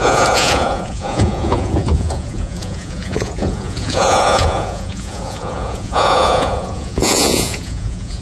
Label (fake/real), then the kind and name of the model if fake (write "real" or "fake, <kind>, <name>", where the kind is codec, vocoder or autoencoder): fake, vocoder, Vocos